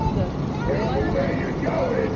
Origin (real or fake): real